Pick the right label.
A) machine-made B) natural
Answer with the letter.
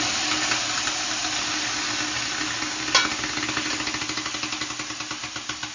B